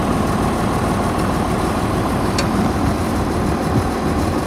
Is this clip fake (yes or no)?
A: yes